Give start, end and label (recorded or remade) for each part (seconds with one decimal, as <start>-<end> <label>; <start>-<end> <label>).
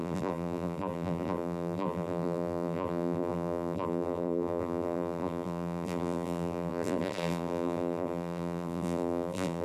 0.0-9.6 remade